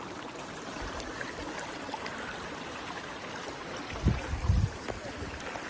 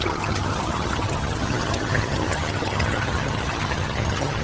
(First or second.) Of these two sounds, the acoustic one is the first